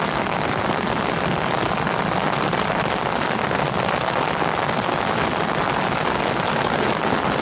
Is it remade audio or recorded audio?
recorded